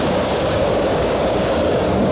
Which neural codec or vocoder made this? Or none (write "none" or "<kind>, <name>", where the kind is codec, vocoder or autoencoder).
codec, DAC